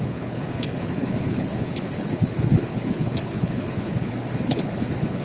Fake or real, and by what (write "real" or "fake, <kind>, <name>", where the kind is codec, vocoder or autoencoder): fake, codec, HILCodec